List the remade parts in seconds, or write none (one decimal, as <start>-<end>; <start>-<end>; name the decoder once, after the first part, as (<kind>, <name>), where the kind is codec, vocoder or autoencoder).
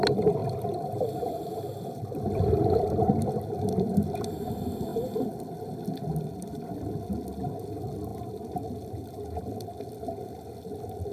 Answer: 0.4-4.4 (vocoder, BigVGAN v2)